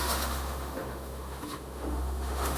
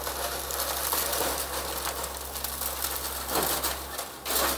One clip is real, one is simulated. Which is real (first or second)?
second